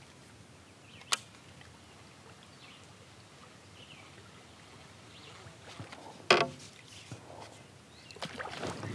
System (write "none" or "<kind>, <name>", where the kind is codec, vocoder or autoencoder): none